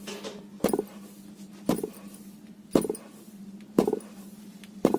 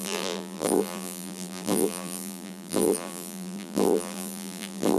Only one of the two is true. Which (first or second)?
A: first